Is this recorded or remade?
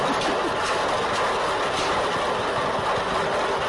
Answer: recorded